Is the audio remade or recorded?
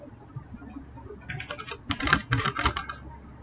recorded